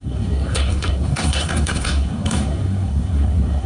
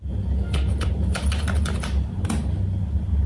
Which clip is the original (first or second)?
second